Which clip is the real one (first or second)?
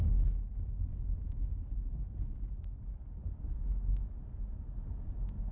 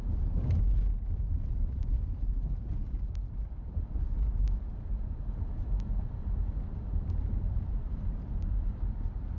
first